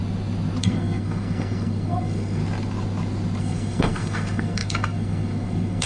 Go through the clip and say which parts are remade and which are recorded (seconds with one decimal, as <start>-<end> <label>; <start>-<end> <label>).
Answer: 0.0-0.6 recorded; 0.6-2.4 remade; 2.4-3.4 recorded; 3.4-5.9 remade